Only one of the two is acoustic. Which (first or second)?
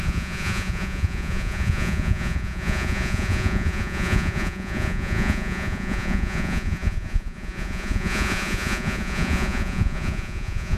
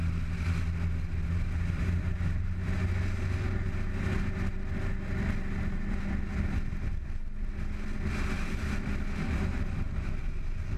second